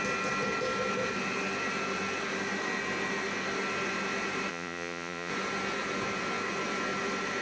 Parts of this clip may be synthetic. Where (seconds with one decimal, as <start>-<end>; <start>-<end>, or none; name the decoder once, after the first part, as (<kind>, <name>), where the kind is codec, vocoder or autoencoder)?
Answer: 4.5-5.3 (vocoder, Vocos)